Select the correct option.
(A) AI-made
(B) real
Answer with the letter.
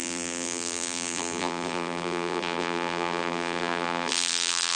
A